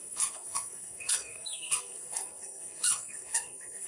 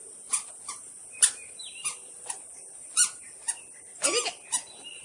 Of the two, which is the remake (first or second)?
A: first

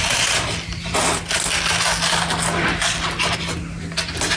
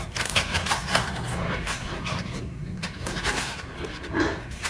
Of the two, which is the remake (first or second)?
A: second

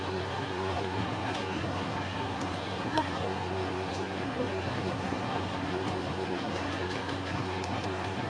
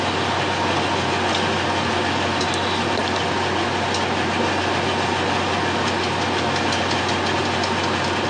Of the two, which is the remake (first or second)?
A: first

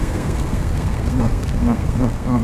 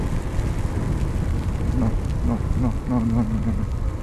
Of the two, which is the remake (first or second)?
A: first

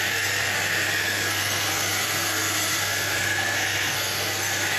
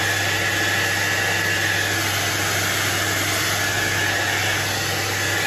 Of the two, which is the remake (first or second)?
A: first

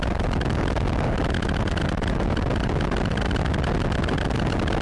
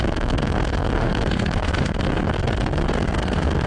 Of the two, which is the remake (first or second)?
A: second